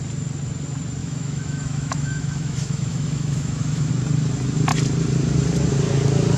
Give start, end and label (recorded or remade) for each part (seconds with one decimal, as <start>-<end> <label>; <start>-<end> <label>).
0.0-1.0 recorded; 1.0-3.9 remade; 3.9-6.4 recorded